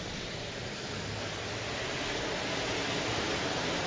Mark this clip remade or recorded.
recorded